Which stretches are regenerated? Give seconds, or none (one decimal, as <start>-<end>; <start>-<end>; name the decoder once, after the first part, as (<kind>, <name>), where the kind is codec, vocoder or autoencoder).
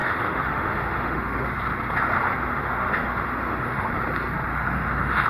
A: 0.0-1.5 (autoencoder, DAC-VAE); 2.3-3.9; 4.5-5.3